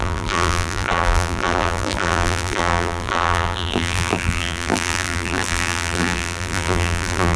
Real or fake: fake